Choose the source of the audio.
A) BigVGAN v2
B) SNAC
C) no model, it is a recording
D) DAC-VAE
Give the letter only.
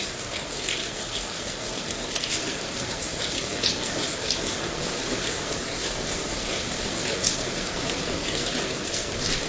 B